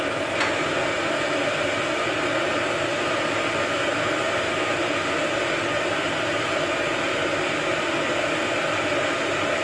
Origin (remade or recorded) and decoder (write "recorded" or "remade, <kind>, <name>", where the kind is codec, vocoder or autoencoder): recorded